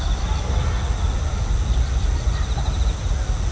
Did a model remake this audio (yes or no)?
no